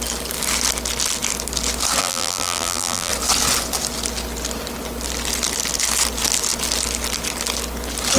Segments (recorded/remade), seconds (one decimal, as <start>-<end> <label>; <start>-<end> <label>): 0.0-2.0 recorded; 2.0-3.1 remade; 3.1-8.2 recorded